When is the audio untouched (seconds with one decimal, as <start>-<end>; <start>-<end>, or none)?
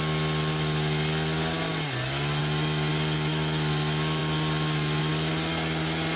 0.0-6.2